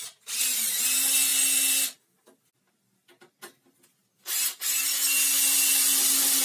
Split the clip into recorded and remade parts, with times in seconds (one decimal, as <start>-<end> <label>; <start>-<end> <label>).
0.0-6.4 recorded

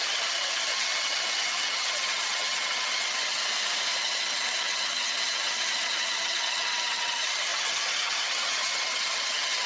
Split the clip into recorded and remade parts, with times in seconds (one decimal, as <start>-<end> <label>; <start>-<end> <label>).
0.0-3.4 remade; 3.4-4.0 recorded; 4.0-9.7 remade

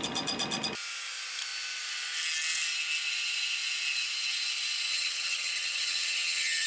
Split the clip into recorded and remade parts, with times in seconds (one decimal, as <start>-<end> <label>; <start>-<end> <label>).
0.0-4.9 recorded; 4.9-6.7 remade

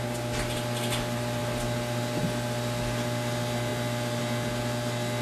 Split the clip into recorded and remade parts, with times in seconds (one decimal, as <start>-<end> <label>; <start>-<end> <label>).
0.0-5.2 recorded

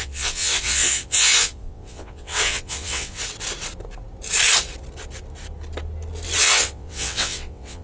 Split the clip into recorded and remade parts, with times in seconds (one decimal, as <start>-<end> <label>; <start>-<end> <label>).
0.0-3.2 remade; 3.2-6.4 recorded; 6.4-7.8 remade

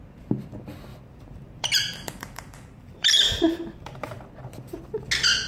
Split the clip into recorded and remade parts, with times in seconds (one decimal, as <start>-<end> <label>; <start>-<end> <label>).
0.0-0.9 recorded; 0.9-4.2 remade; 4.2-5.5 recorded